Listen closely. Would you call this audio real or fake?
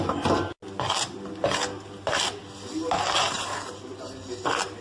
real